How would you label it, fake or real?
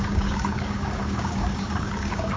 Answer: fake